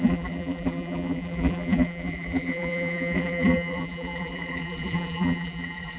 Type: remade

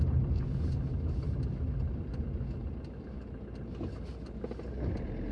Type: recorded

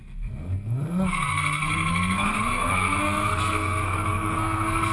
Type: remade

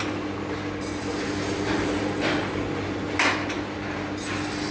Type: recorded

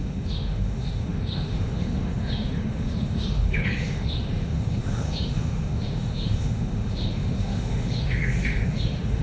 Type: remade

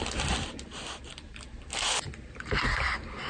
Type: recorded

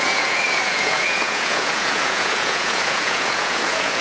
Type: remade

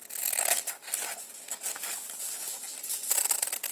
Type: recorded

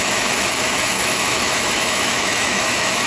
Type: remade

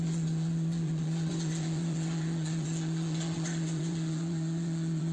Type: remade